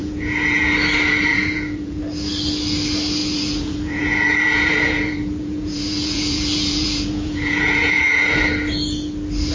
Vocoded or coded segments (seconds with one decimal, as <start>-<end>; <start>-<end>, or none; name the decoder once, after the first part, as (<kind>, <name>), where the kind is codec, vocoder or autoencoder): 0.0-0.7 (vocoder, Vocos); 1.3-2.0; 3.2-8.4